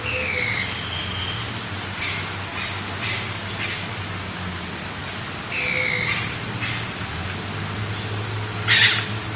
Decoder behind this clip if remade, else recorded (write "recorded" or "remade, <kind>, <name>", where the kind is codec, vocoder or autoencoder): recorded